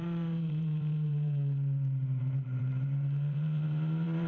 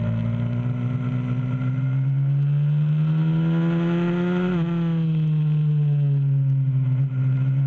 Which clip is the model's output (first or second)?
first